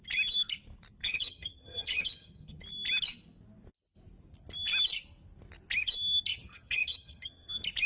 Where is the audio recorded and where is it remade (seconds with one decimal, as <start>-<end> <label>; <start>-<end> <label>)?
0.0-1.0 recorded; 1.0-2.6 remade; 2.6-6.3 recorded; 6.3-7.5 remade; 7.5-7.9 recorded

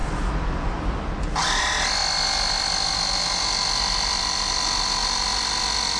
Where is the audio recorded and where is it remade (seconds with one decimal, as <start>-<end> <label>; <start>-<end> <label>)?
0.0-6.0 recorded

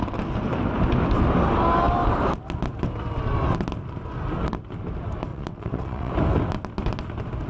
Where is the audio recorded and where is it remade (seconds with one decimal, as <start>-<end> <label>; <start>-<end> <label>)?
0.0-5.3 recorded; 5.3-6.1 remade; 6.1-7.5 recorded

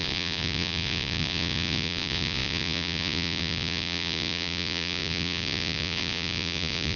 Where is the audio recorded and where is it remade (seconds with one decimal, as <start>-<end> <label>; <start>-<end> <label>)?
0.0-7.0 remade